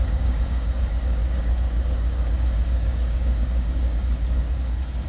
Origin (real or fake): fake